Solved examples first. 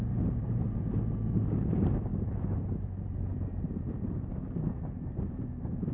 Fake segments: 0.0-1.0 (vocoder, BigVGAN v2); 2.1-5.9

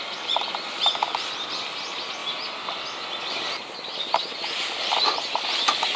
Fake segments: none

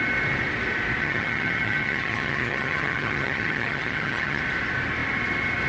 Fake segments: 1.0-4.4 (vocoder, HiFi-GAN)

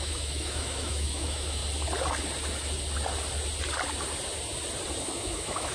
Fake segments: 0.0-1.6 (autoencoder, DAC-VAE); 5.0-5.7

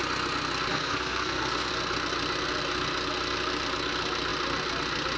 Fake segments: 0.7-1.7 (codec, SNAC)